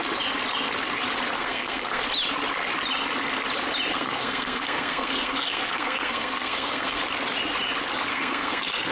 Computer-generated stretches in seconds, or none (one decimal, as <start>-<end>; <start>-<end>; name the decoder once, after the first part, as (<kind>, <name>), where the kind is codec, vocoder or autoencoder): 1.4-2.0 (codec, SNAC); 3.9-7.0; 8.1-8.9